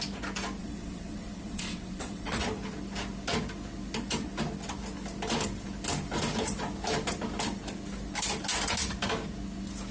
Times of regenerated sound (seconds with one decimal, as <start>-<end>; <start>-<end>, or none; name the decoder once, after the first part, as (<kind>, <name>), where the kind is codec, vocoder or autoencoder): 0.6-2.4 (vocoder, WaveNeXt)